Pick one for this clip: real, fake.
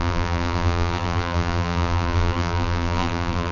fake